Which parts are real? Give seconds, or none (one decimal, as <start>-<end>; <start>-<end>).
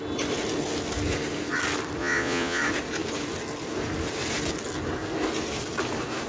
0.0-2.0; 2.6-6.3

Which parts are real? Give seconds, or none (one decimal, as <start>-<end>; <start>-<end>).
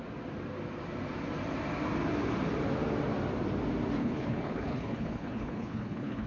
0.0-4.0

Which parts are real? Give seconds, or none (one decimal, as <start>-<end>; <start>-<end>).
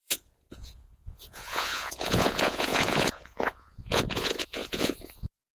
none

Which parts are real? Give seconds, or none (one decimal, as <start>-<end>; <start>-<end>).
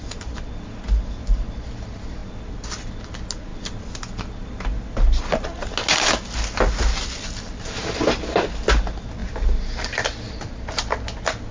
0.0-11.5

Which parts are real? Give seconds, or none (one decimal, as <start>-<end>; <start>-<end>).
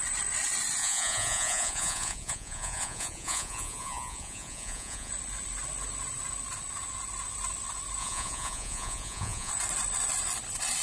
0.0-0.8; 5.1-8.0; 9.5-10.8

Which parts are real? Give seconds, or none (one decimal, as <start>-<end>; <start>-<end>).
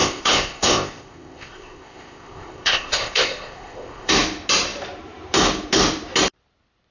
4.1-6.9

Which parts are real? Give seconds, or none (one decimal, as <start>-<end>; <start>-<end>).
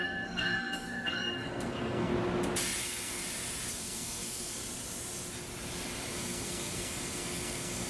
2.1-2.8; 3.2-3.8; 4.6-6.1